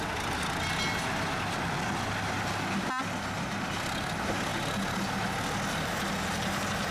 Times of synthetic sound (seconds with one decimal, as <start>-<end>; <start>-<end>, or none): none